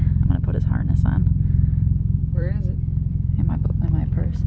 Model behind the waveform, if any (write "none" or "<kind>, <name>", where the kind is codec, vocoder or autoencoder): vocoder, BigVGAN v2